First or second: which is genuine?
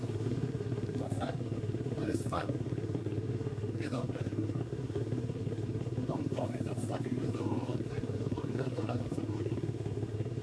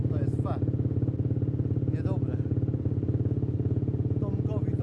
second